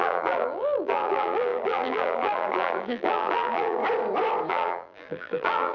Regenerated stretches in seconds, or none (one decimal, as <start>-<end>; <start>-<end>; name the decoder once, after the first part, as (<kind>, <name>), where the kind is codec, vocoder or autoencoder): 0.0-3.8 (vocoder, BigVGAN v2); 4.5-5.7